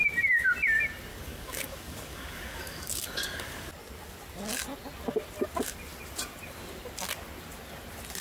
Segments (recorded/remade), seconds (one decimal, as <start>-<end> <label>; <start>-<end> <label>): 0.0-1.1 recorded; 1.1-3.7 remade; 3.7-8.2 recorded